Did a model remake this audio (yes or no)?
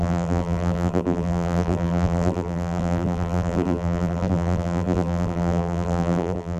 yes